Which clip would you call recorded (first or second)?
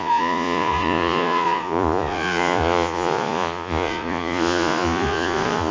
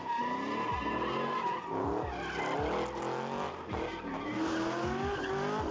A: second